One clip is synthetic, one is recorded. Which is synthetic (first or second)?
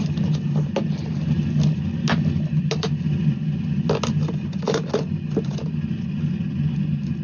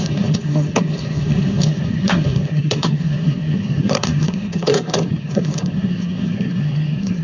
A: second